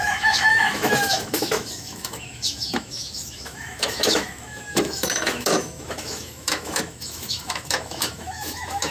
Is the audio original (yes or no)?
no